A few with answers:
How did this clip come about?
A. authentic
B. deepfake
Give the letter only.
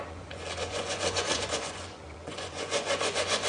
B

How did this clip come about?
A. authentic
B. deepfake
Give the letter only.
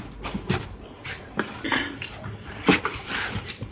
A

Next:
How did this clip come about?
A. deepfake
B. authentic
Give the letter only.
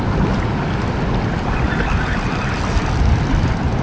B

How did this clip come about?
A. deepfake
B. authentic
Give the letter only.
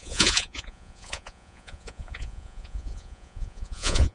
A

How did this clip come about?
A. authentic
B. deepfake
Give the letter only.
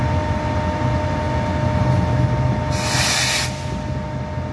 A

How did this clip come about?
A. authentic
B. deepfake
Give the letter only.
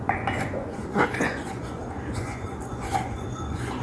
B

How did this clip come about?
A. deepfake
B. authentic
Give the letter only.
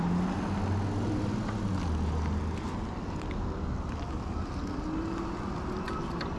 B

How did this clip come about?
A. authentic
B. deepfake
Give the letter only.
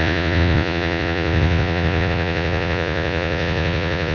B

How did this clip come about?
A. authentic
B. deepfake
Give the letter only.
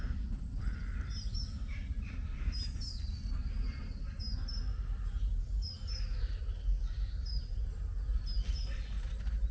A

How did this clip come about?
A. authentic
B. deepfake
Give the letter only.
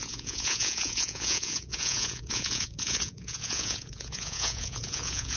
B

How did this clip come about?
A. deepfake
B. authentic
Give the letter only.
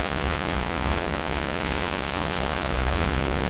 A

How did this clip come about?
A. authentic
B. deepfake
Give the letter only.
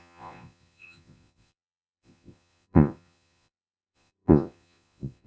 B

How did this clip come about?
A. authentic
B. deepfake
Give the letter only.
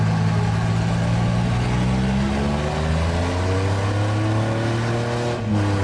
A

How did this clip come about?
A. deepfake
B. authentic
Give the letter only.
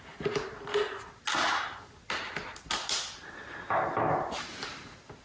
B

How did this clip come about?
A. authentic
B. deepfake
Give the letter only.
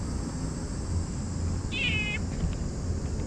A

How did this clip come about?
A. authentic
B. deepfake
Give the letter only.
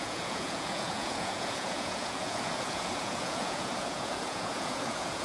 B